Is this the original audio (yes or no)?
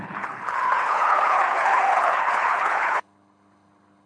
no